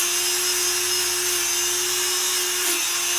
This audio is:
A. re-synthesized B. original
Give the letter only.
B